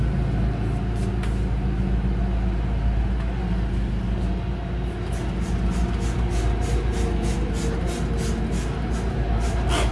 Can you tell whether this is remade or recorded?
recorded